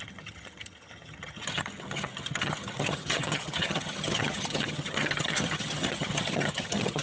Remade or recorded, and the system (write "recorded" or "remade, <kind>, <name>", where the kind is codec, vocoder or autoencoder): remade, vocoder, HiFi-GAN